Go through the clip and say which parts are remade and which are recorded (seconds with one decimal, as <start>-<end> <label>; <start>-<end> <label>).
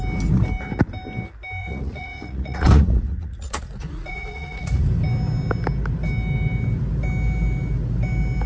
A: 0.0-1.6 recorded; 1.6-4.8 remade; 4.8-8.5 recorded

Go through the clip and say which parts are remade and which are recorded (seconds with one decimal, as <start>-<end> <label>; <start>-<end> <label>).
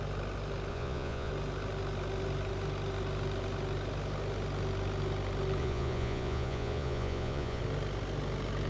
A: 0.0-0.7 recorded; 0.7-1.3 remade; 1.3-5.6 recorded; 5.6-7.6 remade; 7.6-8.7 recorded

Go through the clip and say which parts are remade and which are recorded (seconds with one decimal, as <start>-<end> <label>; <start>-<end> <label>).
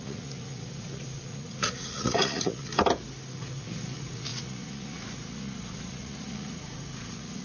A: 0.0-2.7 remade; 2.7-3.3 recorded; 3.3-7.4 remade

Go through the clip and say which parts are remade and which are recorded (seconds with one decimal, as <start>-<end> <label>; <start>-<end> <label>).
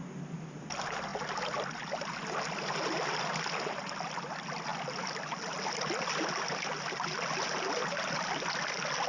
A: 0.0-9.1 recorded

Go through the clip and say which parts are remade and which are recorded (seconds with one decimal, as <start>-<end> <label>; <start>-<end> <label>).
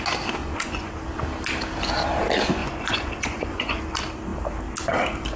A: 0.0-0.4 recorded; 0.4-0.9 remade; 0.9-2.6 recorded; 2.6-3.8 remade; 3.8-5.4 recorded